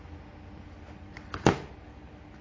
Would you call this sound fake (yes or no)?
yes